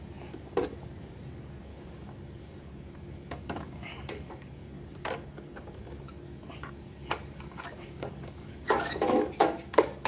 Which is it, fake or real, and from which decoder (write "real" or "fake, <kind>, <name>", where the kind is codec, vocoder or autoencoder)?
fake, codec, DAC